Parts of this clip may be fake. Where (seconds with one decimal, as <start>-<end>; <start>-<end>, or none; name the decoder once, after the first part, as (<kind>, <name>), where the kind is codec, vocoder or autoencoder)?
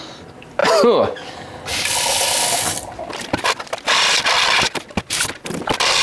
0.6-4.1 (vocoder, BigVGAN v2)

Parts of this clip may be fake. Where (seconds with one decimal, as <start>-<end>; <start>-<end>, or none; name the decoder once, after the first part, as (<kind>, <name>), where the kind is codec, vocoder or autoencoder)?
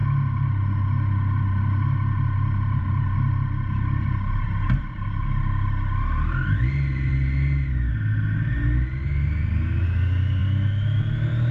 none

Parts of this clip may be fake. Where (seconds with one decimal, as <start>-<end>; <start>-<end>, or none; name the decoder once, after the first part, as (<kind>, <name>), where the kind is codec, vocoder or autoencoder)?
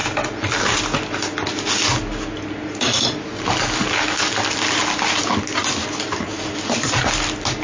none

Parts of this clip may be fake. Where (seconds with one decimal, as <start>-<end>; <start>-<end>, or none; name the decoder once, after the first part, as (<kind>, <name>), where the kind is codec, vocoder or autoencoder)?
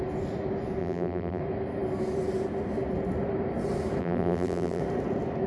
0.8-1.4 (vocoder, BigVGAN v2); 4.0-4.8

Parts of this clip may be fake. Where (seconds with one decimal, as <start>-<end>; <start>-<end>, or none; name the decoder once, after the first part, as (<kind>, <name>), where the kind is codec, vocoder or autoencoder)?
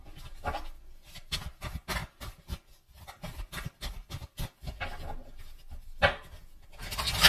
none